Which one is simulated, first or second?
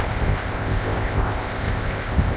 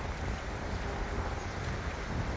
first